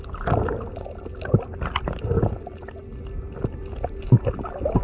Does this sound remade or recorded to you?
recorded